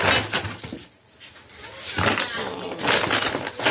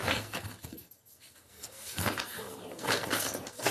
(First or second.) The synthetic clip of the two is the second